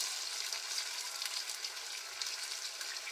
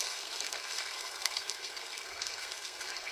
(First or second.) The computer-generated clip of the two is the second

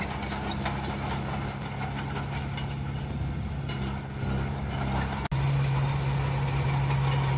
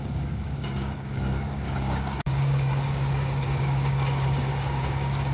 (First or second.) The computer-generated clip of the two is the second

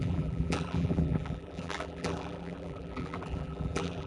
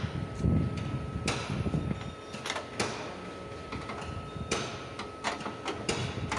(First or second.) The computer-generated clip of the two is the first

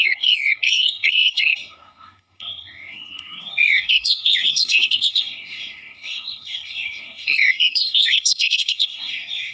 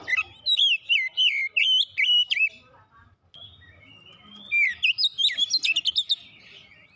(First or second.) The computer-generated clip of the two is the first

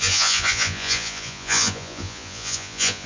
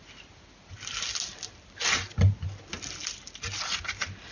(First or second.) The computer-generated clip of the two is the first